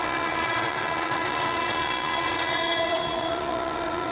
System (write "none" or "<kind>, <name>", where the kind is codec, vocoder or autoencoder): vocoder, Vocos